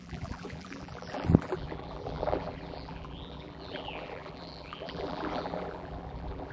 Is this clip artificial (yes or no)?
yes